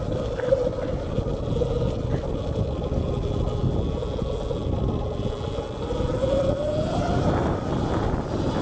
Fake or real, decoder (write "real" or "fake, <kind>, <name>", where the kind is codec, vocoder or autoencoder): real